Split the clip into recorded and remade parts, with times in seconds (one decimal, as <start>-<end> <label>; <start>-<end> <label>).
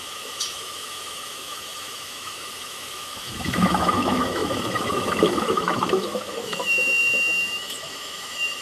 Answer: 0.0-8.6 remade